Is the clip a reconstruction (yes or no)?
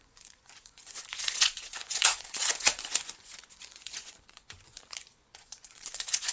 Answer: yes